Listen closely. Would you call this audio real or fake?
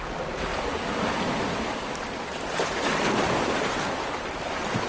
real